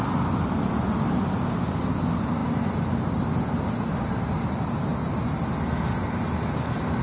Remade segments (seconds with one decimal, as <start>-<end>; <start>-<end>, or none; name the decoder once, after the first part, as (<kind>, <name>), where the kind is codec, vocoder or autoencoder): none